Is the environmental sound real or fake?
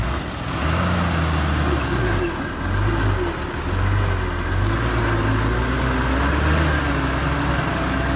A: real